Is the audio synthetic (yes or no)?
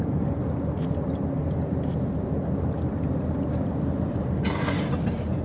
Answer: no